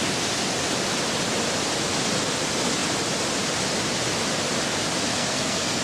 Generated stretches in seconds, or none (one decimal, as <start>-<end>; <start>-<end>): 5.1-5.8